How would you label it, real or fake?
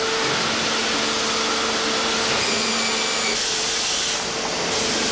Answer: real